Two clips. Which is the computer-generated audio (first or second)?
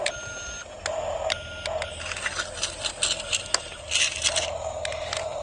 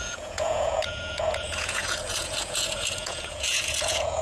second